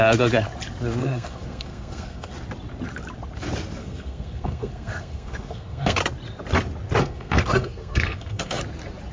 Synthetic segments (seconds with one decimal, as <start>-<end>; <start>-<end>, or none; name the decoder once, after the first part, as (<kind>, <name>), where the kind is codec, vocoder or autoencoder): 1.0-2.3 (codec, SNAC); 3.8-6.0; 7.0-8.6